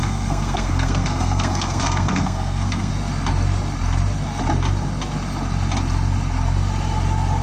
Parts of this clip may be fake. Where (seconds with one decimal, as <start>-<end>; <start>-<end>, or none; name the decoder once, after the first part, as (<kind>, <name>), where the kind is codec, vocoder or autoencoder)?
0.0-2.9 (codec, SNAC)